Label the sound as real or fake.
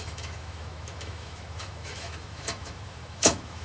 fake